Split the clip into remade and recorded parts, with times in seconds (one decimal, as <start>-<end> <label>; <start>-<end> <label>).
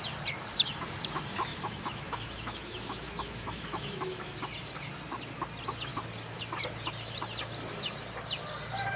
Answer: 0.0-1.5 recorded; 1.5-4.4 remade; 4.4-9.0 recorded